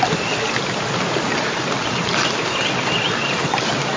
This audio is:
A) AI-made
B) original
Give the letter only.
B